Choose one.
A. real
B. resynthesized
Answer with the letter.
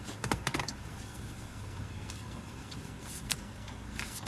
B